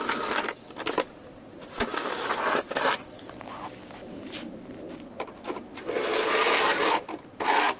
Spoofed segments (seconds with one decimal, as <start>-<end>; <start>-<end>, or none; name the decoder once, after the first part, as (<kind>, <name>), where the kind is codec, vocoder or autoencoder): none